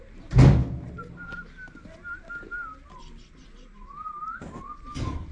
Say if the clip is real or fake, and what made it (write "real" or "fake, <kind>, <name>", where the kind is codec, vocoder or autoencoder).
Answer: real